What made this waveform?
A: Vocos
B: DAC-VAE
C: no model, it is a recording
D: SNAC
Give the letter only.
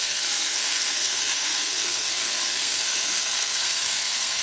D